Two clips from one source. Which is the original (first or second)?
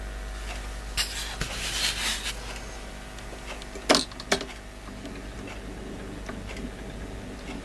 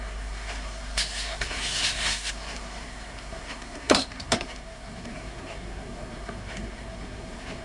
first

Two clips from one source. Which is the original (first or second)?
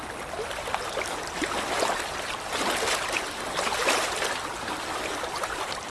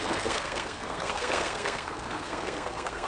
first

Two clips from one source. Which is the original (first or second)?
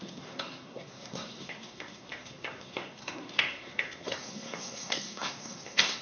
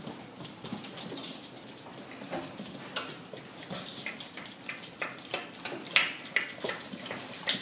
second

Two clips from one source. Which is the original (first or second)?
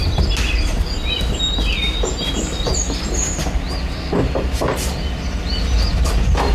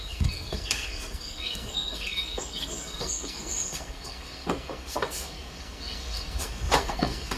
first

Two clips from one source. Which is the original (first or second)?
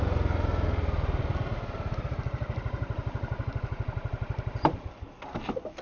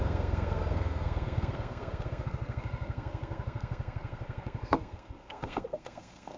first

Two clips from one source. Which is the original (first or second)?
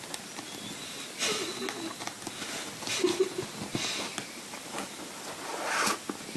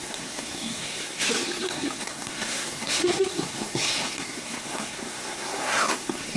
first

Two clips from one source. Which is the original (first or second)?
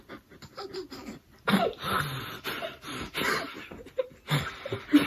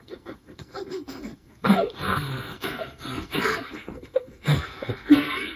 first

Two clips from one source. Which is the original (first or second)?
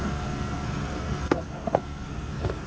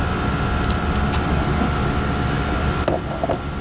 second